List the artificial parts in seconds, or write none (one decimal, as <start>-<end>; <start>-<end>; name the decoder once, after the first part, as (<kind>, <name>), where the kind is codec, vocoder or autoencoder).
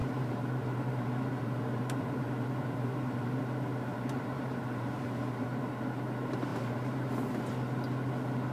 0.0-3.4 (vocoder, BigVGAN v2); 3.9-5.7; 6.5-7.1